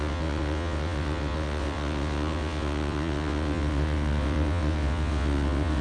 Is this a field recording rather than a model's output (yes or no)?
no